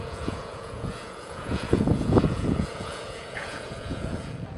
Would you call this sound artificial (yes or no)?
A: yes